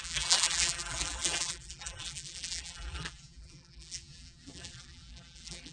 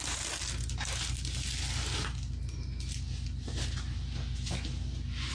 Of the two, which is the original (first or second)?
second